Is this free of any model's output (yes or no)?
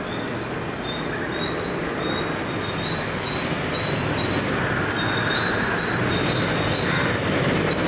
yes